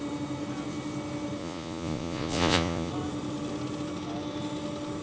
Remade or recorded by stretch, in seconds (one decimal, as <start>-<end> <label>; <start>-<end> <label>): 0.0-1.4 recorded; 1.4-2.9 remade; 2.9-5.0 recorded